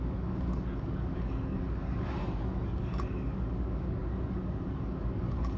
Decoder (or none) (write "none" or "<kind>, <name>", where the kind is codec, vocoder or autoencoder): codec, DAC